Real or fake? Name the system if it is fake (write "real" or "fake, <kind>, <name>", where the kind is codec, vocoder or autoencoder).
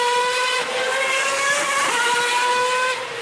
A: real